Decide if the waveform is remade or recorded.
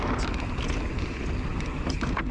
recorded